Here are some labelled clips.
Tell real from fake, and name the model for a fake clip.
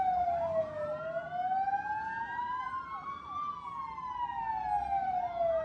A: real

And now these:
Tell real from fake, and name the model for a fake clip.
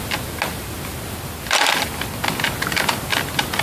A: real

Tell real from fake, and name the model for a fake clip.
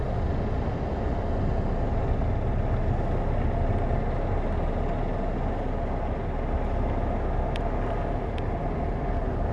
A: real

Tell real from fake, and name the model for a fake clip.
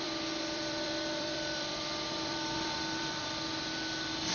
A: fake, vocoder, BigVGAN v2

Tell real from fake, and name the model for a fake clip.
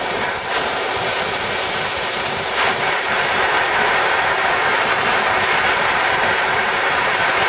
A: fake, vocoder, BigVGAN v2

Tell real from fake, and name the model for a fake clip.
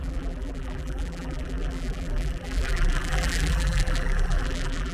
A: fake, vocoder, BigVGAN v2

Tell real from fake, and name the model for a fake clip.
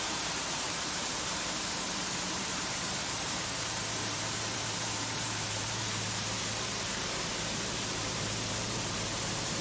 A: fake, vocoder, BigVGAN v2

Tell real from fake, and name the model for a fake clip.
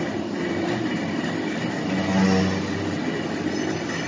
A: real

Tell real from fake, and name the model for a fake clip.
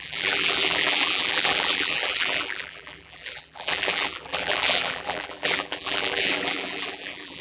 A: fake, vocoder, BigVGAN v2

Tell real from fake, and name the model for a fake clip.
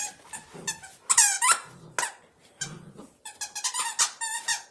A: real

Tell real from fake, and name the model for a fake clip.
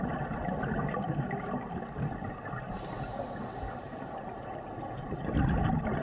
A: real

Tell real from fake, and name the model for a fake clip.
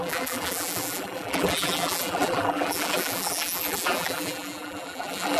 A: fake, vocoder, BigVGAN v2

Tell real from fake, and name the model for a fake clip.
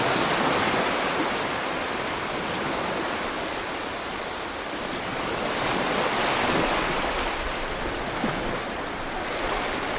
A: real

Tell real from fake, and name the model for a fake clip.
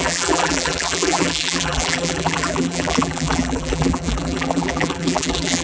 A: fake, vocoder, BigVGAN v2